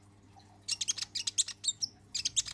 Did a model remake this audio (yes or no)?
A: no